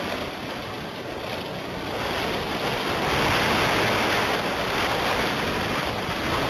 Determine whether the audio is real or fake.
real